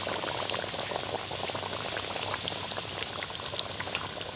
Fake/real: real